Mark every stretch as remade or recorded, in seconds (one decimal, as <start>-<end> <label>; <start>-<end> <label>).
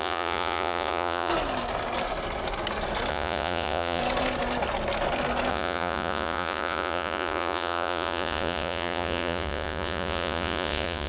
0.0-1.3 remade; 1.3-3.1 recorded; 3.1-4.0 remade; 4.0-5.5 recorded; 5.5-11.1 remade